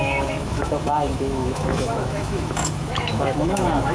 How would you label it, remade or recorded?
remade